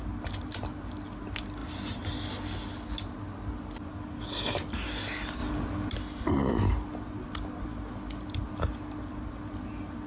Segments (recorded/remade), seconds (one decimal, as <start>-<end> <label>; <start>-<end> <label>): 0.0-10.1 recorded